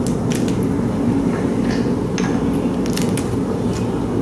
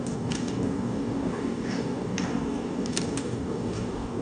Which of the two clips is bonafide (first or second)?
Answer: first